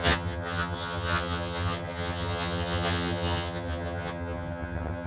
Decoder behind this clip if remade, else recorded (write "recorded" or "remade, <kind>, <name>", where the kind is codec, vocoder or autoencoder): remade, vocoder, HiFi-GAN